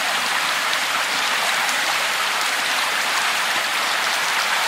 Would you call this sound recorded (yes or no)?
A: no